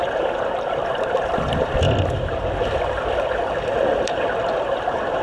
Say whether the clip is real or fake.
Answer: fake